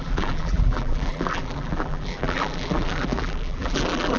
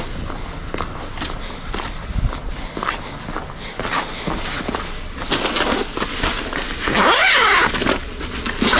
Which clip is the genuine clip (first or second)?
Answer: second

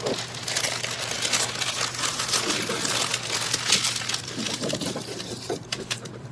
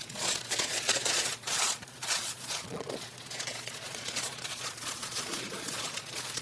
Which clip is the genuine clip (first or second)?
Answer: first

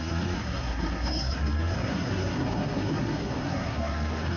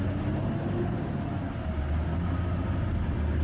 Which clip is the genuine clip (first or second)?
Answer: second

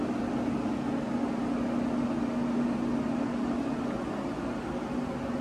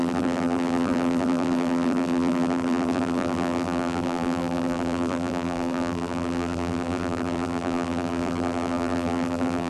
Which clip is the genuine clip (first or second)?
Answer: first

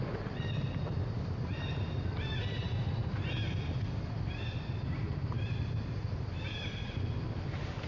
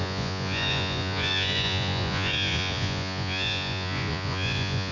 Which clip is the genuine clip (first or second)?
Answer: first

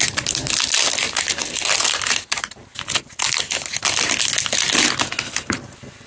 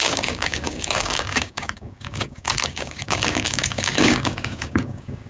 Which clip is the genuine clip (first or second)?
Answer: first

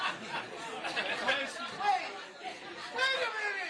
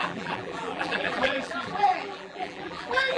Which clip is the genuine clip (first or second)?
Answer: first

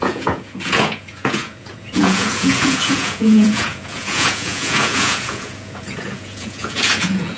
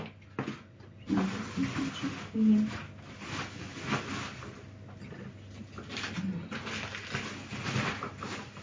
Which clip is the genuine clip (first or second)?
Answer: second